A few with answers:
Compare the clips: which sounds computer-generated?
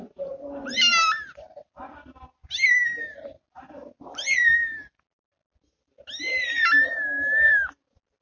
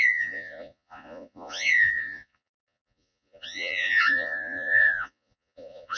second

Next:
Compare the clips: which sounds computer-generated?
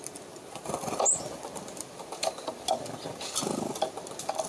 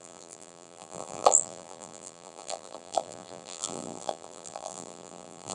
second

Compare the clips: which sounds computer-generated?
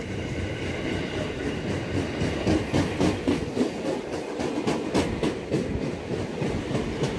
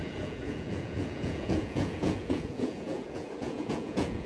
second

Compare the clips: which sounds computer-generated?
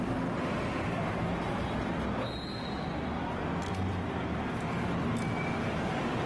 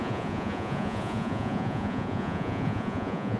second